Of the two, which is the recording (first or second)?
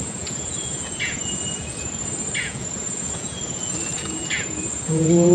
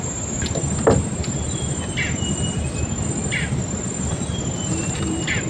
second